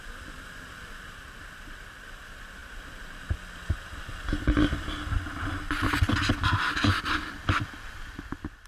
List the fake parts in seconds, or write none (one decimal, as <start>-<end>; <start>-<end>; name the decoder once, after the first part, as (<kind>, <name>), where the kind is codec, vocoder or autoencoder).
none